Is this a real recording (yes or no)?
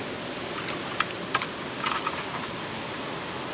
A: yes